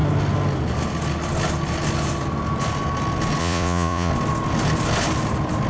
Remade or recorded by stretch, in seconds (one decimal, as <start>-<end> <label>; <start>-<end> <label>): 0.0-3.4 recorded; 3.4-4.1 remade; 4.1-5.7 recorded